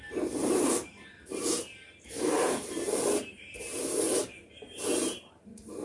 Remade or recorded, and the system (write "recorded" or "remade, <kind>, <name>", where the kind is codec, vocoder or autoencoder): remade, vocoder, BigVGAN v2